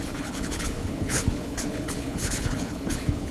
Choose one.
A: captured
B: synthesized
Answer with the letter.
B